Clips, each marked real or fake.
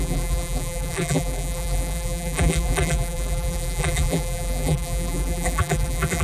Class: fake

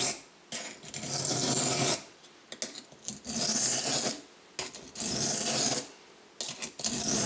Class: real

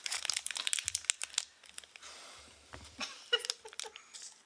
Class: real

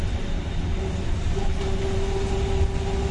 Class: real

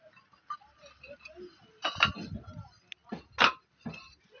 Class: real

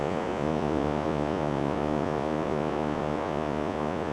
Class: fake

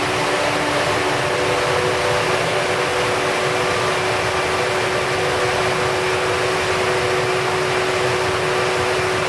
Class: real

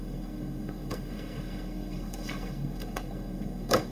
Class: fake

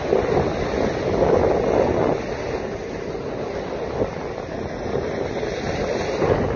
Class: real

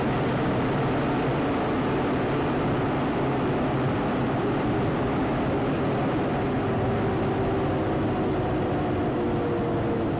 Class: real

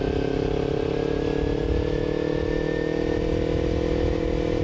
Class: real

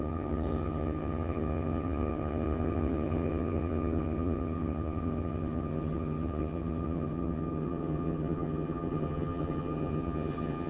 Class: fake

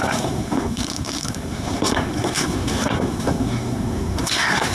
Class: fake